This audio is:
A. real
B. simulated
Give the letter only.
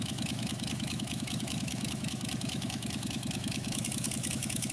B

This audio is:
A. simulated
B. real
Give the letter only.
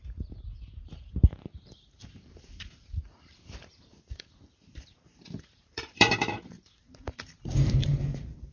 A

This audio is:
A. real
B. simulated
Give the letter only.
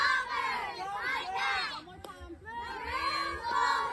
A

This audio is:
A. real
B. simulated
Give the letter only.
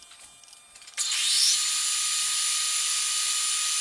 A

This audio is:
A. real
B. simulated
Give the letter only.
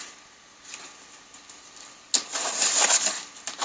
A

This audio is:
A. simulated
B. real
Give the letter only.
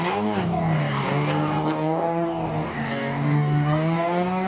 A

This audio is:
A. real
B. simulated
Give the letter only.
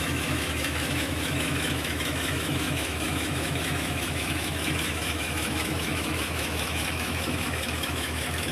B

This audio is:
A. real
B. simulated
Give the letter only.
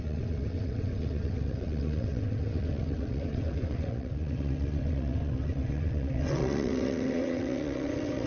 B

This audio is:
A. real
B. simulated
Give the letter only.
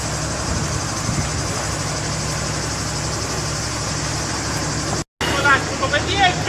A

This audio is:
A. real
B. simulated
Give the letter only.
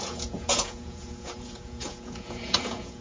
B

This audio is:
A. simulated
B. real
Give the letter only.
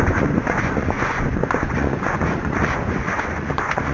A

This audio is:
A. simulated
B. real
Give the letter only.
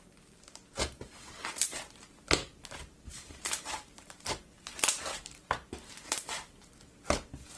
A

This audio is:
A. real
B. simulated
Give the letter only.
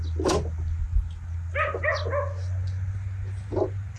A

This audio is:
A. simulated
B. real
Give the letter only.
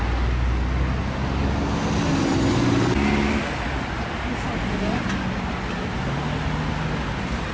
B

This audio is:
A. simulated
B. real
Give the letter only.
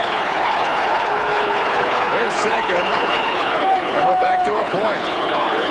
A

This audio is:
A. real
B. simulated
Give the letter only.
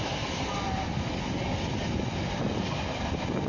A